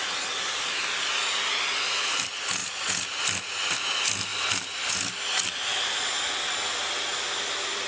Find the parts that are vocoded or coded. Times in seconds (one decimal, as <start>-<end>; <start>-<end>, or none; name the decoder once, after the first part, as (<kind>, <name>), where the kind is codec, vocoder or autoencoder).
2.6-3.2 (vocoder, BigVGAN v2)